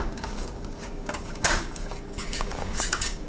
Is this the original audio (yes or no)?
no